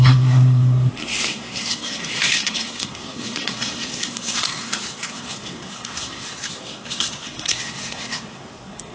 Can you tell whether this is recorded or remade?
remade